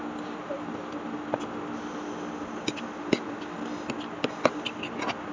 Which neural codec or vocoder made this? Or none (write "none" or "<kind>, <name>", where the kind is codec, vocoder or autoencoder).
none